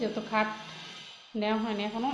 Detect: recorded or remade recorded